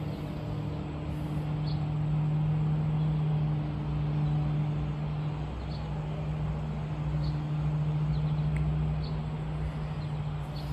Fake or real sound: real